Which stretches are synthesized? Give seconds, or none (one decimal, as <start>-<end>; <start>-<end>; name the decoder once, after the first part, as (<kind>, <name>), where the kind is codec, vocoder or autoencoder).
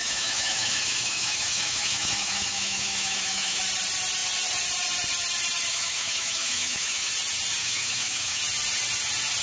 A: 0.0-3.6 (autoencoder, DAC-VAE); 5.7-7.1; 7.6-8.4